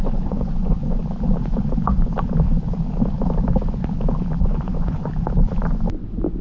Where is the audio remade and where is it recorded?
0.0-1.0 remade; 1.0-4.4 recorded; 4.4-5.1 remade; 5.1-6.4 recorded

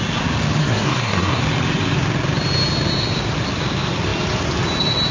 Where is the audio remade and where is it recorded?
0.0-0.6 recorded; 0.6-1.4 remade; 1.4-5.1 recorded

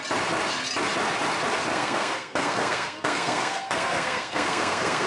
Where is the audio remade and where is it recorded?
0.0-1.7 recorded; 1.7-5.1 remade

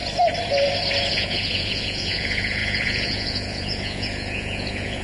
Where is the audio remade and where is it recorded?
0.0-1.1 recorded; 1.1-5.0 remade

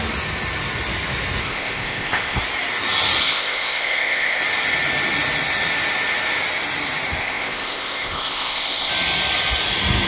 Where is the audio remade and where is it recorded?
0.0-1.4 recorded; 1.4-2.4 remade; 2.4-3.2 recorded; 3.2-4.4 remade; 4.4-7.2 recorded; 7.2-8.9 remade; 8.9-10.1 recorded